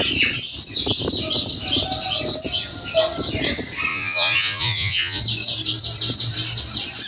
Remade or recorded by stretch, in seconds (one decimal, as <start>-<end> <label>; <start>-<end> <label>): 0.0-3.9 recorded; 3.9-5.2 remade; 5.2-7.1 recorded